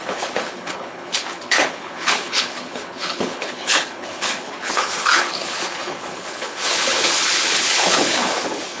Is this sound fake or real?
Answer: fake